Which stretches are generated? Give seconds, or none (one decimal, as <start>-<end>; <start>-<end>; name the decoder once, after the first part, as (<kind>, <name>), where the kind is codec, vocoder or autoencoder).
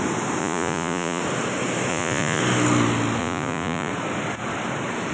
0.4-1.2 (vocoder, Vocos); 1.9-2.4; 3.2-3.9